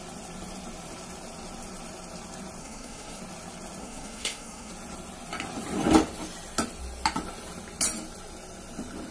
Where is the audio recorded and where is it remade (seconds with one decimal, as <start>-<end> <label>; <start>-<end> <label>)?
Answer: 0.0-2.6 recorded; 2.6-3.2 remade; 3.2-3.8 recorded; 3.8-4.7 remade; 4.7-9.1 recorded